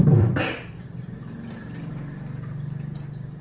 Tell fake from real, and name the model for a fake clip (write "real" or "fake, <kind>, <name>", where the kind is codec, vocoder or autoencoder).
real